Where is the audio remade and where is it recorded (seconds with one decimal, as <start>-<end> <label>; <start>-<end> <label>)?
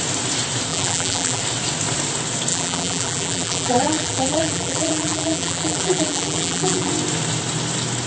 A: 0.0-0.7 recorded; 0.7-1.4 remade; 1.4-2.5 recorded; 2.5-6.9 remade; 6.9-8.1 recorded